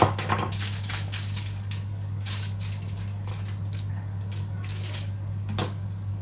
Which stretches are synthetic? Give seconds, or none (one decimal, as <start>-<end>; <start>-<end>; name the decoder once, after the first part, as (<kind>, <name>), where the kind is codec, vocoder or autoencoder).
0.0-3.3 (codec, DAC); 3.9-6.2